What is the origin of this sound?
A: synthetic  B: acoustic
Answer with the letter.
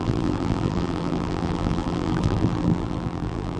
A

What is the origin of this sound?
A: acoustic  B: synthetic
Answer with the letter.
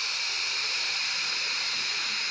A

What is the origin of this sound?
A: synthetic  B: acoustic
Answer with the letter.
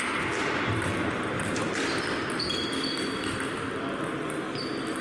B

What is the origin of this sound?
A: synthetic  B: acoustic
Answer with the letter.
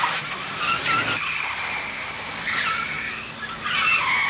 B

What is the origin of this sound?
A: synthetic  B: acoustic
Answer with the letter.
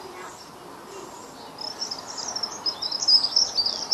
B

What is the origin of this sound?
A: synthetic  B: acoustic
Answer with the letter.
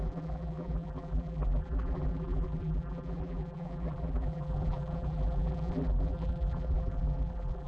A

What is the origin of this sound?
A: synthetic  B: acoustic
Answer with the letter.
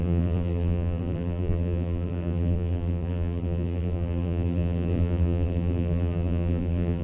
A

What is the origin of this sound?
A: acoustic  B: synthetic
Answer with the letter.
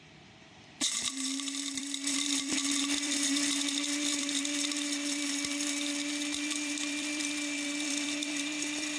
B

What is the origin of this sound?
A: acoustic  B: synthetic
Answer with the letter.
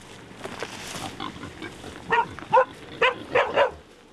A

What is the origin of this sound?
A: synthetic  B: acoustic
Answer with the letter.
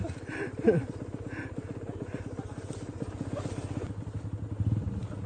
B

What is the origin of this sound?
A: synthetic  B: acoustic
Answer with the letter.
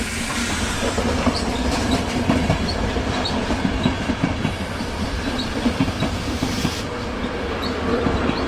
A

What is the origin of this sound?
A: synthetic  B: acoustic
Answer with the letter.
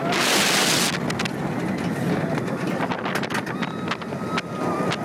B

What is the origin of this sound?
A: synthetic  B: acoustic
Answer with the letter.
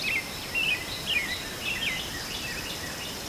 B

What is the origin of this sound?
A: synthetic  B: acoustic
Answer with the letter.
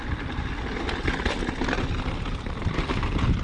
B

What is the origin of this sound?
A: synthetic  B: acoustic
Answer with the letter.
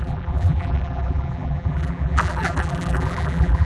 A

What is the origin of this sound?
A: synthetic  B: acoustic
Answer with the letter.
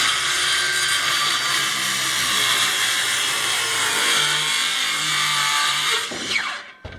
A